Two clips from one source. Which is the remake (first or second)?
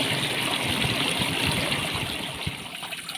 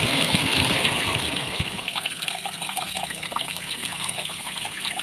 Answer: second